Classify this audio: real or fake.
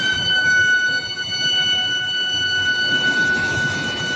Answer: fake